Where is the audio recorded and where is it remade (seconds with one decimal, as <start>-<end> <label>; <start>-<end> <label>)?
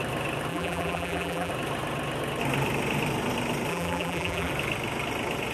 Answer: 0.0-0.5 recorded; 0.5-1.5 remade; 1.5-3.7 recorded; 3.7-4.5 remade; 4.5-5.5 recorded